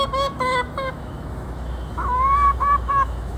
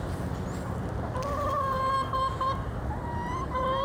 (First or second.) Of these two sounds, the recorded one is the second